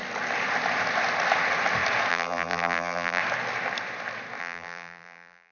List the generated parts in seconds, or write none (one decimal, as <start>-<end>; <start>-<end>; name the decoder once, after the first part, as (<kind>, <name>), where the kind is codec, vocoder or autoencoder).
2.1-3.2 (vocoder, BigVGAN v2); 4.4-5.5